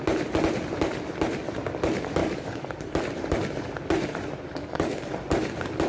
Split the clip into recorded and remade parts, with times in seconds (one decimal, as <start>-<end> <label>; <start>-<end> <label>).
0.0-2.2 recorded; 2.2-3.0 remade; 3.0-4.6 recorded; 4.6-5.1 remade; 5.1-5.9 recorded